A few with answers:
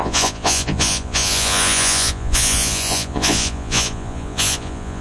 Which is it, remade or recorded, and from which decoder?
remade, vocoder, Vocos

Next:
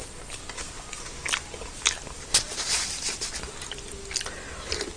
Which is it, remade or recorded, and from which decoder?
recorded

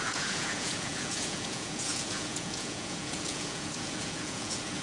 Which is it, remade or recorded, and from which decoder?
remade, vocoder, Vocos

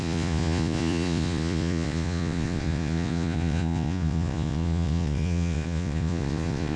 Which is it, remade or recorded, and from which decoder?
remade, vocoder, Vocos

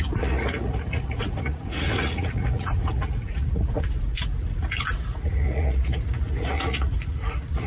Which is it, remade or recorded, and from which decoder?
remade, vocoder, Vocos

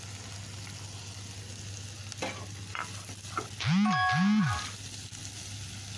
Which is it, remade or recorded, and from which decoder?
recorded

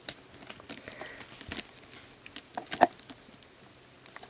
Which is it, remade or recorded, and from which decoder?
recorded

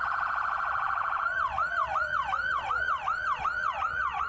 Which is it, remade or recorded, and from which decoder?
remade, vocoder, Vocos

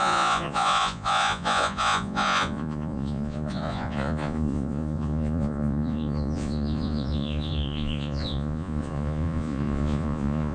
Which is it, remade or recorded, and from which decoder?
remade, vocoder, Vocos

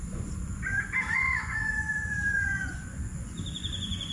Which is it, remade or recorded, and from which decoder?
remade, vocoder, Vocos